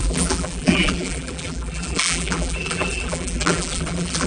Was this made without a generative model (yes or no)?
no